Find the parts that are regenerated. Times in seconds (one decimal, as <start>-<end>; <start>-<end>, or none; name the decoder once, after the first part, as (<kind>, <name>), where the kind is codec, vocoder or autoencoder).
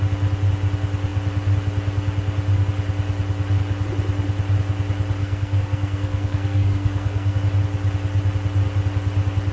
5.2-7.4 (codec, SNAC)